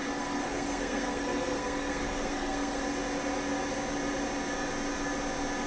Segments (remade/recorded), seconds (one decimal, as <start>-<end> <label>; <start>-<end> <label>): 0.0-2.8 remade; 2.8-5.7 recorded